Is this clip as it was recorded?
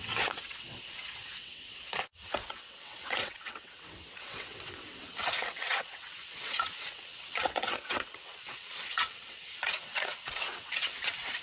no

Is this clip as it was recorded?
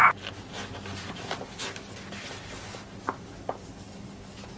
yes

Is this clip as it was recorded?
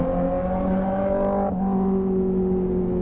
yes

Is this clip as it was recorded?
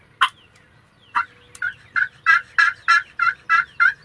yes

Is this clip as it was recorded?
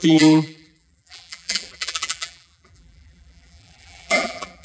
no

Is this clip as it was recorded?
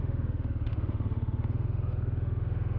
no